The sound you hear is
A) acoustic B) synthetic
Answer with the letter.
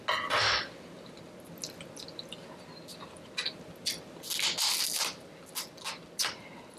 A